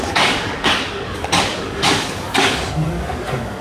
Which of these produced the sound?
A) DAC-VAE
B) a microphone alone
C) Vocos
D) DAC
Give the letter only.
D